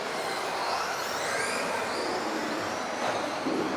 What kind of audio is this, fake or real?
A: real